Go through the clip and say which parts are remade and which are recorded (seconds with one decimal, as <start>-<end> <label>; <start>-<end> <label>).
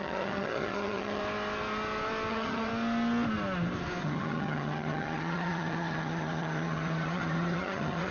0.0-1.2 remade; 1.2-2.3 recorded; 2.3-2.7 remade; 2.7-4.0 recorded; 4.0-8.1 remade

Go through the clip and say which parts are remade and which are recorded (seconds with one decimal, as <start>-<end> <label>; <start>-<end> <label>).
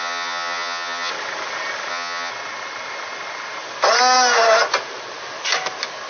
0.0-1.1 remade; 1.1-1.9 recorded; 1.9-2.3 remade; 2.3-6.1 recorded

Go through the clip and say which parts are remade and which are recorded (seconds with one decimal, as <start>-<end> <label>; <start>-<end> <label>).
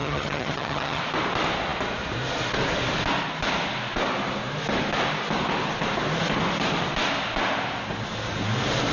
0.0-1.0 remade; 1.0-8.9 recorded